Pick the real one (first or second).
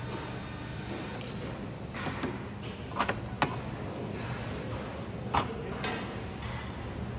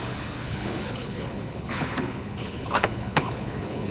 first